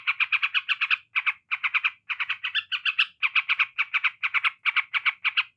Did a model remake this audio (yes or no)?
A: no